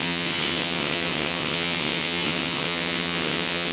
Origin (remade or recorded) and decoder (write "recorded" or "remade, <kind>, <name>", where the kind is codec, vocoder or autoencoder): remade, vocoder, WaveNeXt